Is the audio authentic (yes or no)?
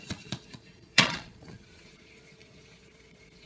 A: no